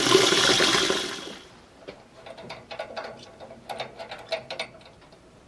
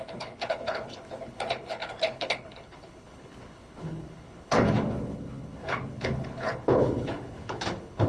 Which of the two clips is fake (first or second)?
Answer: second